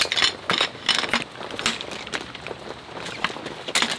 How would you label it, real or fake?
real